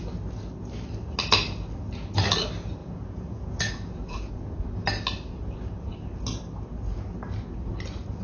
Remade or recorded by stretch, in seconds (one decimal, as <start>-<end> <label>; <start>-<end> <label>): 0.0-2.8 recorded; 2.8-4.3 remade; 4.3-8.2 recorded